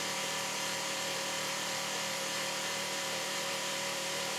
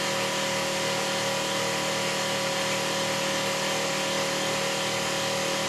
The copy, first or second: first